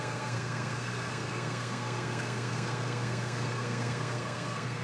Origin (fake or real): fake